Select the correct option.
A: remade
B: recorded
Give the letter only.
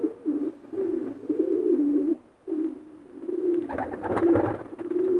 B